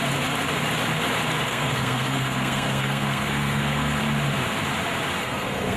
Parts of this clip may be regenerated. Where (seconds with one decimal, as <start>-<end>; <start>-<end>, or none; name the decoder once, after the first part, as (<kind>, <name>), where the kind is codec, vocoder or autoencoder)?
1.5-4.0 (codec, SNAC); 5.2-5.8